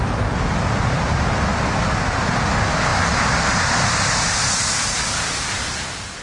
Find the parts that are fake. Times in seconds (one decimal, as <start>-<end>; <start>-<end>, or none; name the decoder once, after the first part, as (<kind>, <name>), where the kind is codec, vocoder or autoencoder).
none